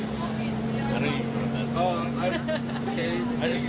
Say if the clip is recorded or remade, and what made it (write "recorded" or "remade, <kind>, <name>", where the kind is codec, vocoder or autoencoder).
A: recorded